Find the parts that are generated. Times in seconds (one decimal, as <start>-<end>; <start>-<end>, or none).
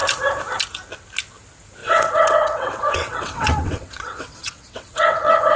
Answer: 1.8-5.6